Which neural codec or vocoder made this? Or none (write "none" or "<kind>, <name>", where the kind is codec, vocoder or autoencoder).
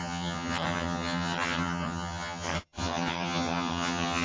vocoder, HiFi-GAN